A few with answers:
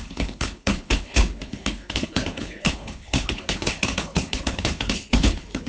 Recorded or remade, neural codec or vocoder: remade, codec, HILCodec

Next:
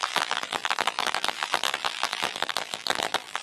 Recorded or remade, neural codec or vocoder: remade, vocoder, BigVGAN v2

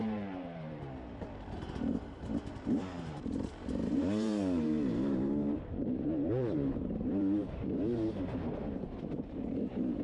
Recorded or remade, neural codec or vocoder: remade, vocoder, BigVGAN v2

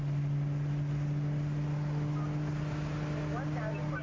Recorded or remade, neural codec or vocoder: recorded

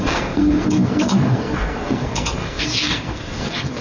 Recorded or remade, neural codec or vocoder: remade, codec, SNAC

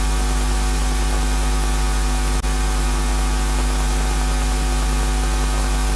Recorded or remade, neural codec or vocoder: recorded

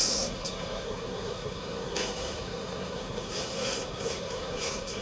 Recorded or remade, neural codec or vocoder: remade, codec, SNAC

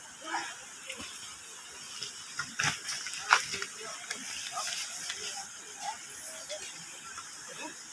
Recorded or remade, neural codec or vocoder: recorded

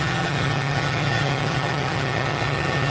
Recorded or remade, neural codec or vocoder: remade, vocoder, HiFi-GAN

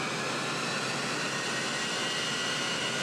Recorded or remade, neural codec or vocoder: recorded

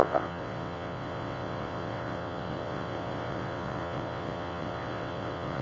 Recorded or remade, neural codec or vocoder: remade, vocoder, WaveNeXt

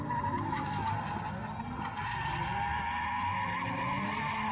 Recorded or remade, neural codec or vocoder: recorded